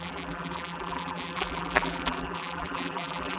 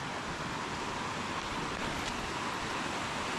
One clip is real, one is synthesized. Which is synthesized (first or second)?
first